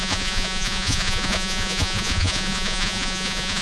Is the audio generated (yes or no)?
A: yes